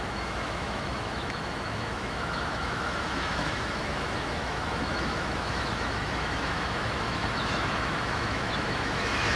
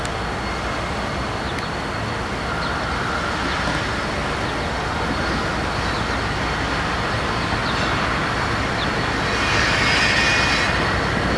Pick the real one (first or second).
second